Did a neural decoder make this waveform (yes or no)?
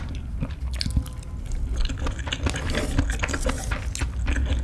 no